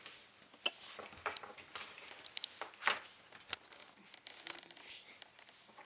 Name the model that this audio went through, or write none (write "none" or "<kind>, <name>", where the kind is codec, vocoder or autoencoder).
none